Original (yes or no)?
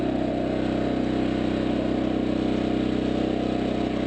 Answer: yes